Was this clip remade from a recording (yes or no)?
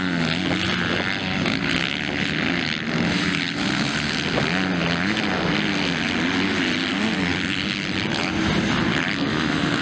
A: no